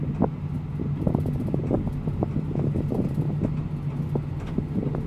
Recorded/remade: recorded